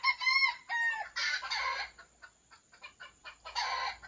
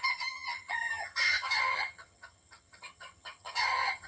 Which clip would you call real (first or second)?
first